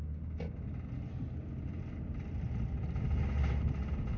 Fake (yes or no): no